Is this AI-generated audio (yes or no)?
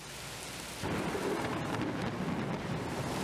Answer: no